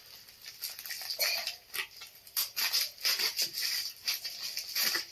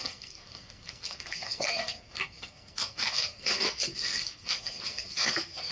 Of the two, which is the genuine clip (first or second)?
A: first